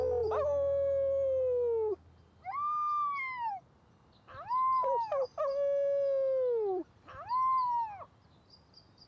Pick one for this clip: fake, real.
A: real